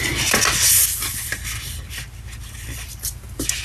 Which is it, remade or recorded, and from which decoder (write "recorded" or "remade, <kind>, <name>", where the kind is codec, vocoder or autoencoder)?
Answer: recorded